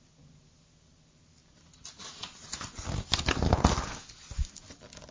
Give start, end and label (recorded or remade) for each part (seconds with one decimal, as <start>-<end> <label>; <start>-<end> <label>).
0.0-5.1 recorded